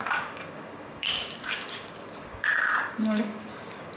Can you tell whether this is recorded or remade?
remade